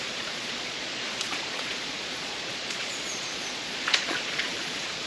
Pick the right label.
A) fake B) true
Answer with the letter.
A